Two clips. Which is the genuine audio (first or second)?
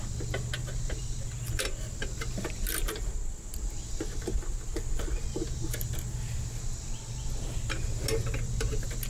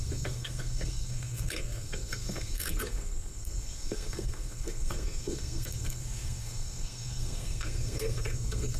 first